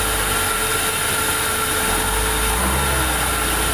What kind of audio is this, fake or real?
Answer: real